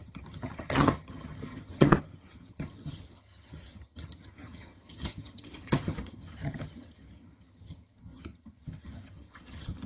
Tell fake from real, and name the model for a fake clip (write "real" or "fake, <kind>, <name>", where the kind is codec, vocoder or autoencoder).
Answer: fake, vocoder, HiFi-GAN